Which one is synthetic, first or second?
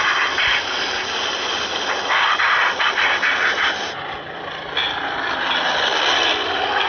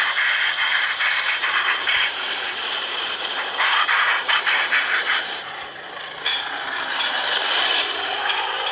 second